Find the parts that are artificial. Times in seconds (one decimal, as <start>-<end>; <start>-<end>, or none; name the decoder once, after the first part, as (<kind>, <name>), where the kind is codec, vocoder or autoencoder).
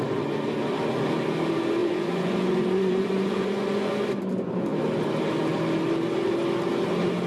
1.8-3.9 (vocoder, Vocos)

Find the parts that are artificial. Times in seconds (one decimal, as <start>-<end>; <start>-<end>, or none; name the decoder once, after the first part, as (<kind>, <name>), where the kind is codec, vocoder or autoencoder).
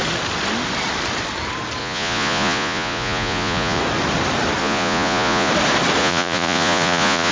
1.8-3.8 (vocoder, Vocos); 4.6-5.5; 6.0-7.3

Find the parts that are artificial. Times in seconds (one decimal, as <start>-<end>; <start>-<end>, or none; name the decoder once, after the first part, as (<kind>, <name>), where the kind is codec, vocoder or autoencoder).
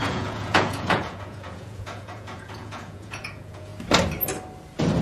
0.0-3.7 (vocoder, Vocos)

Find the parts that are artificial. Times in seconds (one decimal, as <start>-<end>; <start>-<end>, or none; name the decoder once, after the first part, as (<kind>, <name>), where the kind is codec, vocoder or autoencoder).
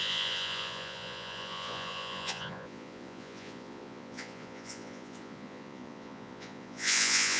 0.0-7.4 (vocoder, Vocos)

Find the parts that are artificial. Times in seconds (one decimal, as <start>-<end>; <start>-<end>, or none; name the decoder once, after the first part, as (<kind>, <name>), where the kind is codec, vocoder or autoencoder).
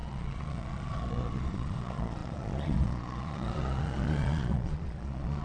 0.0-5.4 (vocoder, Vocos)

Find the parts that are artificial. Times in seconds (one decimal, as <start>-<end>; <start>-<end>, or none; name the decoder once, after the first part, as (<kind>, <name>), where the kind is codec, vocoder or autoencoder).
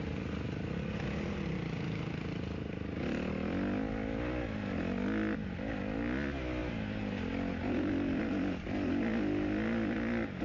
none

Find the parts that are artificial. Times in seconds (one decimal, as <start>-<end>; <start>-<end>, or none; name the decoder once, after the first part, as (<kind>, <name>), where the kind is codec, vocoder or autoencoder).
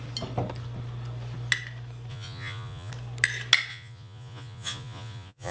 2.1-2.9 (vocoder, Vocos); 3.7-5.5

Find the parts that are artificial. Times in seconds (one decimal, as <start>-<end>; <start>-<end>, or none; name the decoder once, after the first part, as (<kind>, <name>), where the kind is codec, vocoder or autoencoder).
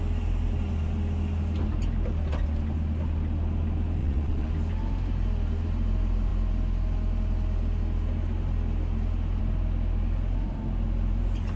4.0-4.5 (vocoder, Vocos)